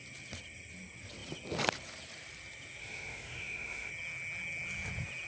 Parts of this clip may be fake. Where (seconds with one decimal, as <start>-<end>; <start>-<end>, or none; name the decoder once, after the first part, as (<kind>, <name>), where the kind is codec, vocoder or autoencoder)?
2.8-3.9 (autoencoder, DAC-VAE)